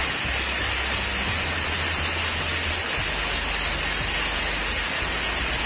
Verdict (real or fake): real